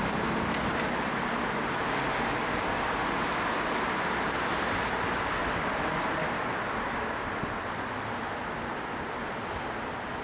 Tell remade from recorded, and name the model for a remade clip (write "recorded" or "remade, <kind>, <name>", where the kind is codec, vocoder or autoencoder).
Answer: recorded